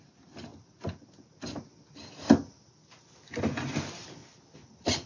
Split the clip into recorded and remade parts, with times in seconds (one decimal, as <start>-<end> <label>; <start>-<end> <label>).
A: 0.0-5.1 recorded